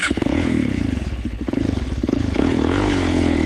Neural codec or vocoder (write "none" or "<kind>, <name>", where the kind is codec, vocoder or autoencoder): codec, HILCodec